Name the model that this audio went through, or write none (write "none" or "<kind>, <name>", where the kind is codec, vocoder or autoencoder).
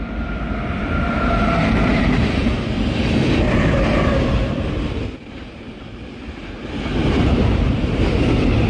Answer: vocoder, BigVGAN v2